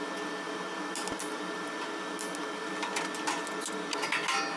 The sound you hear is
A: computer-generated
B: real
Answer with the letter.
B